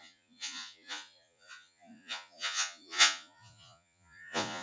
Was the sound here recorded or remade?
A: remade